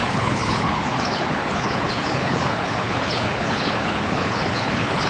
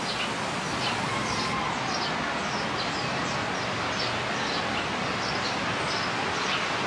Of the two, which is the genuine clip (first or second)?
second